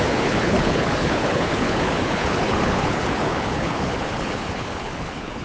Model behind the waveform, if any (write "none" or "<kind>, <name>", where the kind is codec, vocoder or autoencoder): codec, HILCodec